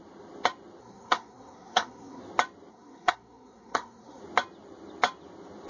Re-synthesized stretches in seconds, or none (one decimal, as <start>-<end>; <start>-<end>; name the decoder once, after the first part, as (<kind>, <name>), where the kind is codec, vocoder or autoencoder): 0.8-2.2 (codec, SNAC); 2.7-4.2